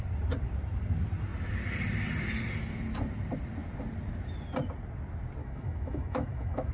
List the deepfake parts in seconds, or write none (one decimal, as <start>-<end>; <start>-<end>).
5.4-6.7